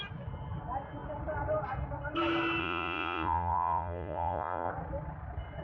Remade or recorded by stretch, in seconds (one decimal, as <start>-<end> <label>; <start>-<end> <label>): 0.0-2.6 recorded; 2.6-4.7 remade; 4.7-5.6 recorded